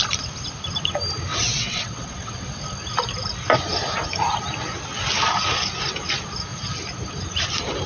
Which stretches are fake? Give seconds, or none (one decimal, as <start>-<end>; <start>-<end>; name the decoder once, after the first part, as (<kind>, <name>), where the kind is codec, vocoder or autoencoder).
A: 1.3-2.6 (vocoder, WaveNeXt)